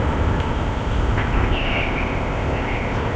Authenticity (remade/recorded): remade